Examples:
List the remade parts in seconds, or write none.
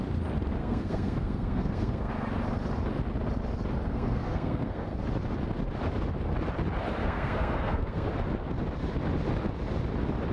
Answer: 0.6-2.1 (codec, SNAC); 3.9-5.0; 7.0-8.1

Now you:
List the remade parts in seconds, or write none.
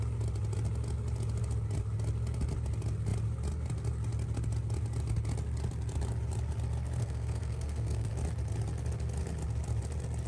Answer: 7.0-8.1 (codec, SNAC)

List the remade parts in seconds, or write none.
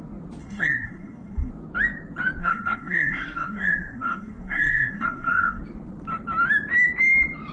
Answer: 0.4-1.5 (codec, SNAC); 2.4-5.6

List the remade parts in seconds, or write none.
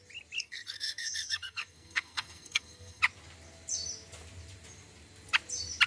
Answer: 0.4-3.0 (codec, SNAC)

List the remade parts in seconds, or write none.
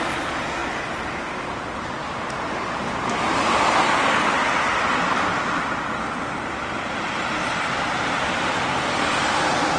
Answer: none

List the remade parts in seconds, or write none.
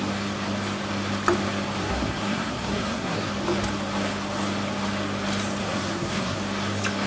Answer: 1.8-3.3 (codec, SNAC); 5.6-6.4